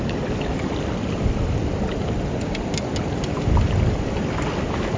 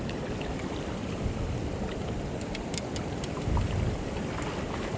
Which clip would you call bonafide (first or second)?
first